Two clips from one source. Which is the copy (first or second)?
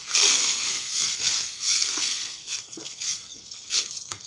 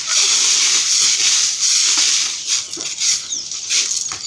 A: first